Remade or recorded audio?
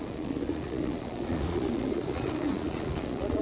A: remade